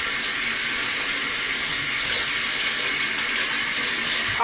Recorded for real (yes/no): yes